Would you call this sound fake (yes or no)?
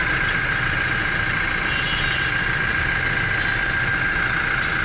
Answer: no